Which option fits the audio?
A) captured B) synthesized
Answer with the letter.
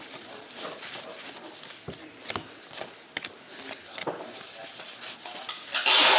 A